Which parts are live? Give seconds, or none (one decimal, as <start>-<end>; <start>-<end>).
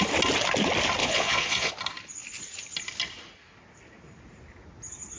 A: 0.0-1.0; 1.7-5.2